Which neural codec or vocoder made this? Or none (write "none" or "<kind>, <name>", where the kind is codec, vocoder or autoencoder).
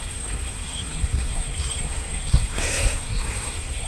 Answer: codec, SNAC